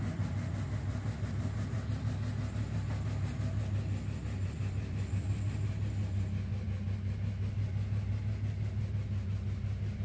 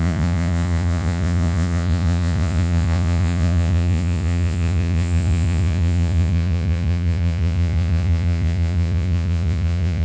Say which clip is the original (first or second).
first